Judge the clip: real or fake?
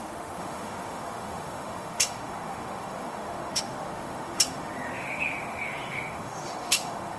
fake